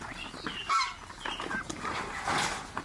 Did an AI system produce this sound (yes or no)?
no